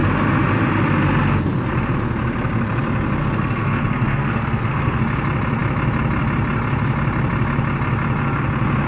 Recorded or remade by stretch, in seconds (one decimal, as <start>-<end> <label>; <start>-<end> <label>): 0.0-3.2 recorded; 3.2-5.0 remade; 5.0-8.9 recorded